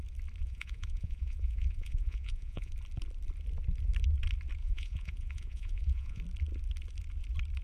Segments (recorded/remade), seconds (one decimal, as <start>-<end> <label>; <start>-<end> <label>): 0.0-0.4 recorded; 0.4-2.7 remade; 2.7-4.6 recorded; 4.6-6.2 remade; 6.2-7.6 recorded